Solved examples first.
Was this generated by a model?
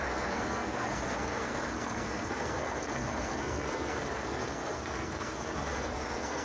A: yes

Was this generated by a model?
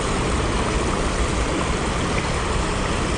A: no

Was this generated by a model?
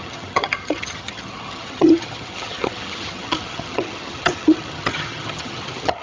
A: yes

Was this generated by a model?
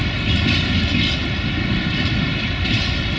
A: no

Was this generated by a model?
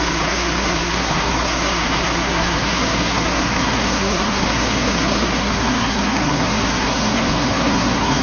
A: yes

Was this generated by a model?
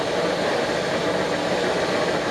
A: no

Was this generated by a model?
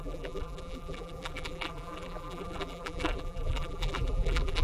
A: yes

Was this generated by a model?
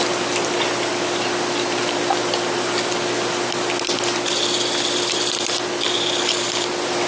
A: no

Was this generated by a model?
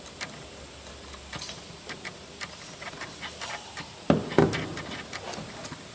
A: no